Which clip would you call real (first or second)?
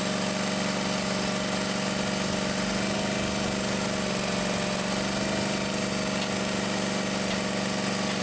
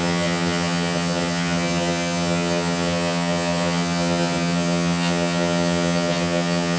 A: first